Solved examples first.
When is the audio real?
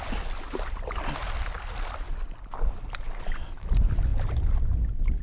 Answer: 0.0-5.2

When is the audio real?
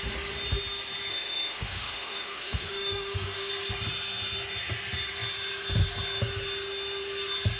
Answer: 0.0-1.1; 3.5-7.6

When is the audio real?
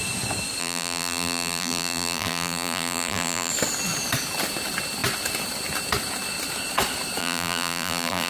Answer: 0.0-0.6; 3.5-7.2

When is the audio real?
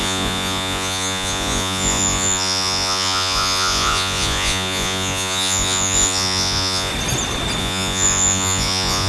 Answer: 6.9-7.6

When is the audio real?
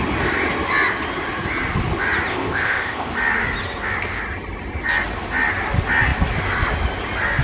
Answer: 0.0-2.3; 3.1-7.4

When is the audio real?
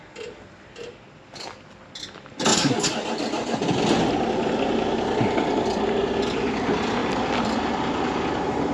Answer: 0.0-8.7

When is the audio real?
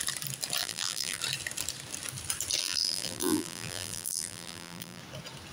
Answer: 0.0-0.6; 1.2-2.6; 5.0-5.5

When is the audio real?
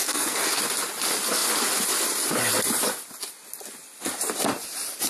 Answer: 0.6-5.1